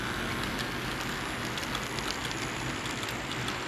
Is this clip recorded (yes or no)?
yes